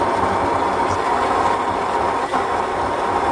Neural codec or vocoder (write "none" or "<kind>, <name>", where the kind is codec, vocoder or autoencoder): none